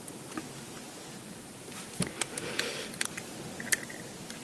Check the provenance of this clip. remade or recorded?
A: recorded